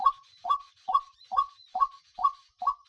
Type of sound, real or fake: fake